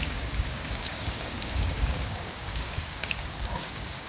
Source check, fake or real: fake